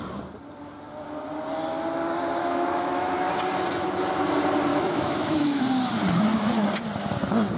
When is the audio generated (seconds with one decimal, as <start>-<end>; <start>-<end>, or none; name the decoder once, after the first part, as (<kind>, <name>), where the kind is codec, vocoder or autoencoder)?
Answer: 2.4-3.3 (autoencoder, DAC-VAE); 4.7-5.6